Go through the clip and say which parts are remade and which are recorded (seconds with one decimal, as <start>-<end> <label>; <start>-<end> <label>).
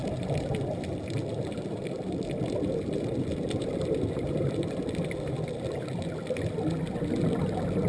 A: 0.0-4.7 remade; 4.7-7.9 recorded